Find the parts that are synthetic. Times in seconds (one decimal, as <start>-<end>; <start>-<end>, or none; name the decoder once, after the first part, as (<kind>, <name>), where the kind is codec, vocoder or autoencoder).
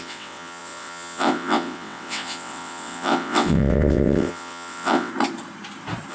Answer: 0.0-5.1 (vocoder, WaveNeXt)